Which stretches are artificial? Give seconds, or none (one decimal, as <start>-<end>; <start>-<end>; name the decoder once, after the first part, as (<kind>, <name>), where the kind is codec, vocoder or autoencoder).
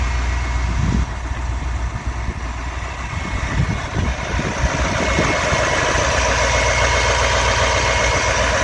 none